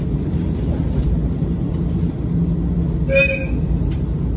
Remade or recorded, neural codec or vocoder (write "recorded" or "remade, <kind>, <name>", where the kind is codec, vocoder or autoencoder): recorded